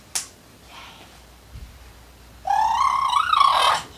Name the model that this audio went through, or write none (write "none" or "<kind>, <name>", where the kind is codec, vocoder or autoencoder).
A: none